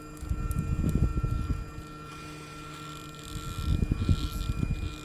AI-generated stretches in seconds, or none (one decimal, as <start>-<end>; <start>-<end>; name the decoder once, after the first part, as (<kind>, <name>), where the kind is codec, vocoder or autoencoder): none